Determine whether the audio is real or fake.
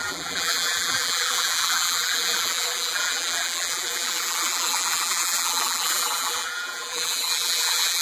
fake